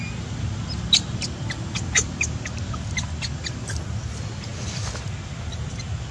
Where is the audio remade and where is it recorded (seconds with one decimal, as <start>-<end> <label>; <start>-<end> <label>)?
0.0-6.1 recorded